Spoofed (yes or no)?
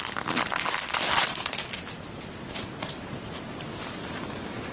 no